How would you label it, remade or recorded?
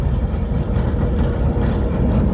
recorded